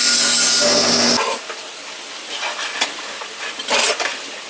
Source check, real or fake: real